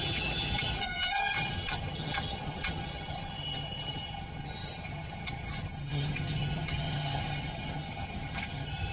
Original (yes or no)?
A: no